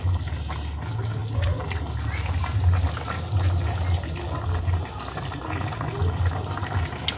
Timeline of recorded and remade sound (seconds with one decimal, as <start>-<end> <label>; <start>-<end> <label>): 0.0-7.2 recorded